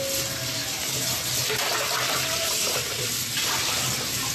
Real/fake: real